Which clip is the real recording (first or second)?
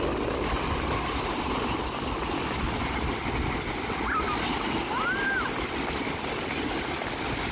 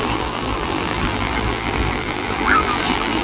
first